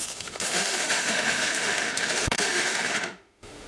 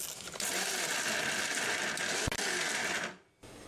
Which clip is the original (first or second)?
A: second